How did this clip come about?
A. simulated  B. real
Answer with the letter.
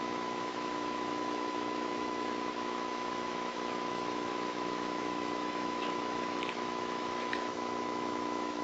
A